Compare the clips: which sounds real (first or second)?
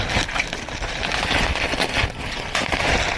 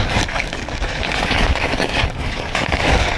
first